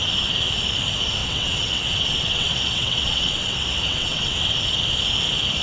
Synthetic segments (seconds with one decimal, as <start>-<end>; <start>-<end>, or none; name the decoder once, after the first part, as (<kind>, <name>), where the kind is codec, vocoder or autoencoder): 1.2-4.6 (vocoder, WaveNeXt)

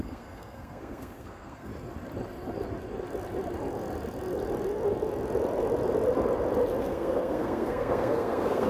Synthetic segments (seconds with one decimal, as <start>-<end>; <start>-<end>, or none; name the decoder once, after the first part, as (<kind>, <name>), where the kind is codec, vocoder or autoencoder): 0.0-1.7 (codec, SNAC); 6.8-8.7